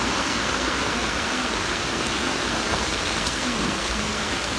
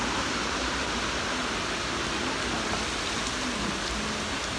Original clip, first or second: second